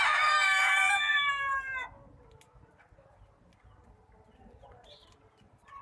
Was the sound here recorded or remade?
recorded